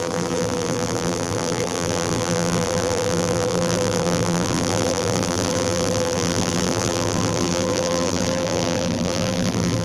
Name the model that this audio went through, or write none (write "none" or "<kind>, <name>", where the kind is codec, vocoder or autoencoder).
vocoder, BigVGAN v2